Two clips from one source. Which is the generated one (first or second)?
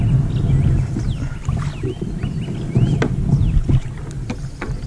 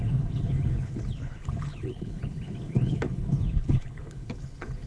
second